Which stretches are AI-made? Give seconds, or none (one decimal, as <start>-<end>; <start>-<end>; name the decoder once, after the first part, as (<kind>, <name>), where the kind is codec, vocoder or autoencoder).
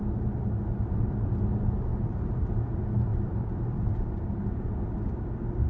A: 1.9-2.5 (vocoder, BigVGAN v2); 3.1-4.8